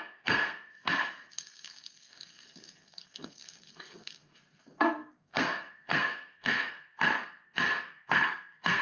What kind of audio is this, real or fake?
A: fake